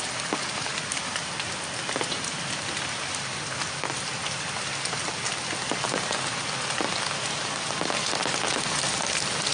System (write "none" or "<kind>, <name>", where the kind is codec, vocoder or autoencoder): none